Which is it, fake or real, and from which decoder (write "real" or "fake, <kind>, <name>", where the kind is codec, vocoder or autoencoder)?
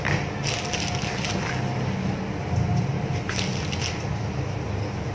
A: real